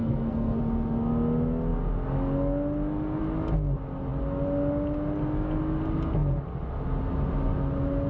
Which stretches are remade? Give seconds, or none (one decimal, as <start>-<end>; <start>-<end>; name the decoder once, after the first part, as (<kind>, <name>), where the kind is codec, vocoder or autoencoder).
0.0-0.6 (codec, SNAC)